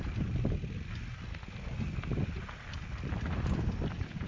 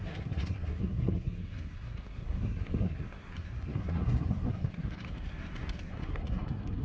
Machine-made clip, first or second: second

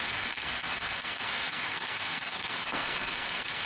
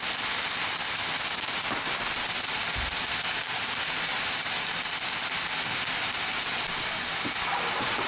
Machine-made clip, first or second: first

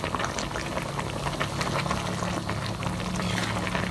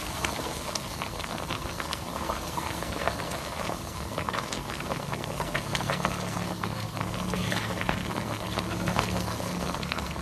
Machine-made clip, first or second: second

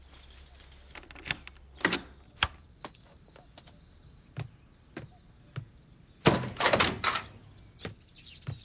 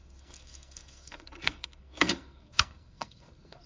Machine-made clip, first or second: second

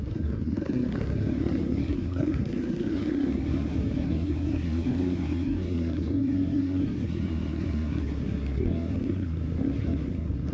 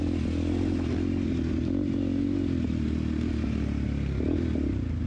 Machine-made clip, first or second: first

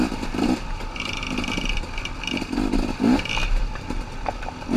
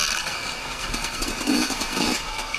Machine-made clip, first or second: second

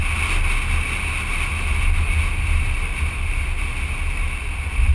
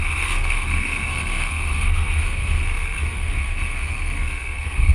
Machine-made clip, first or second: second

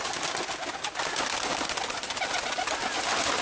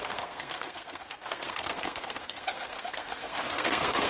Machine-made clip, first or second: second